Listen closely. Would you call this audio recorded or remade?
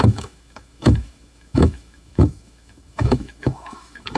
remade